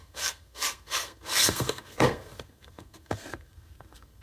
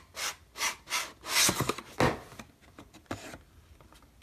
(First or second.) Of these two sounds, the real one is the second